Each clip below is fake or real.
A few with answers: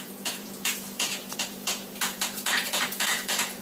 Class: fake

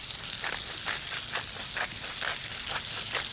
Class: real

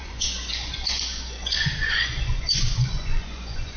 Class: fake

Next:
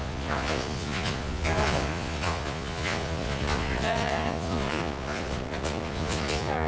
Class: fake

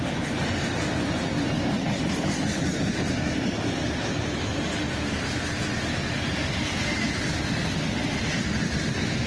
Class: real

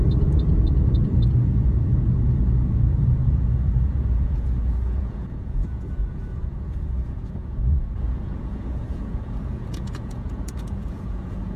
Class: fake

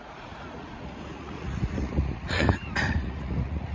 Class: fake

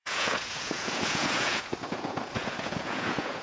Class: fake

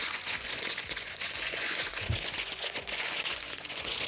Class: fake